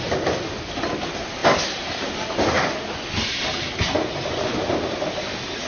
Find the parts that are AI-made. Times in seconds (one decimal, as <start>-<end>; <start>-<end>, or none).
none

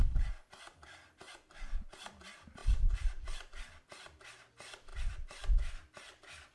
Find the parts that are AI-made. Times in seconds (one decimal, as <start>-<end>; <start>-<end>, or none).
none

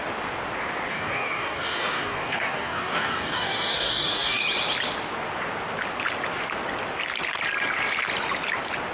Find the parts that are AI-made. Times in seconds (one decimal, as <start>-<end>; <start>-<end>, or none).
0.9-4.4

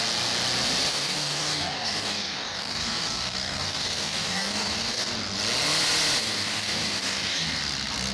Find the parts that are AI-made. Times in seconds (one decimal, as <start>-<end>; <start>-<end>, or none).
0.9-5.1; 6.2-7.6